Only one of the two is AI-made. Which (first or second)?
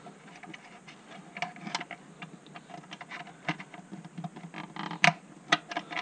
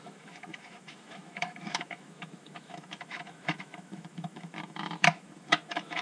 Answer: second